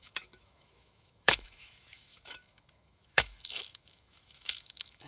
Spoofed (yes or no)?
yes